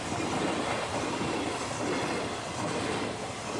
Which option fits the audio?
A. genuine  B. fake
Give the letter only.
A